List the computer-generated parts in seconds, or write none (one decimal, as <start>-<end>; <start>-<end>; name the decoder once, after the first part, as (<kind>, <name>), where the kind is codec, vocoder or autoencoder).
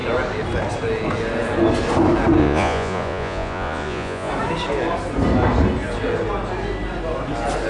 2.4-4.3 (vocoder, Vocos)